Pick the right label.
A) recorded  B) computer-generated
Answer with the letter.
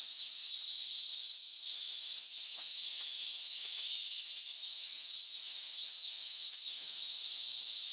B